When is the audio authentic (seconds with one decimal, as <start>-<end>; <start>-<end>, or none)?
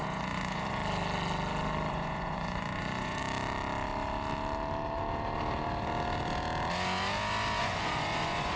0.8-1.9; 3.2-7.6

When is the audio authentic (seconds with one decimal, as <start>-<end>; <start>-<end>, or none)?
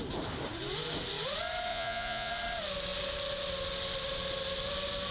0.0-1.7; 2.3-5.1